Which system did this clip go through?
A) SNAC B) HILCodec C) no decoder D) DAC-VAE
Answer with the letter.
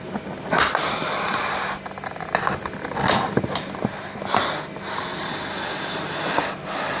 C